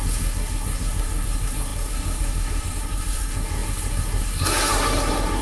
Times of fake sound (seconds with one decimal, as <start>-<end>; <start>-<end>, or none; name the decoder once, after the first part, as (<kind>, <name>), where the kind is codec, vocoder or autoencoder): 0.0-5.4 (codec, SNAC)